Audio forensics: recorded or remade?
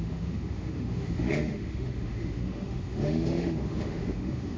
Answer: remade